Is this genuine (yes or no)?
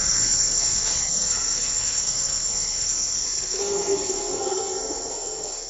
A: no